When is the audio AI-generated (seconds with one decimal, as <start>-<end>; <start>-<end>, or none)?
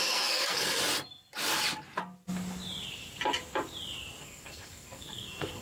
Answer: 0.0-0.8; 4.2-5.6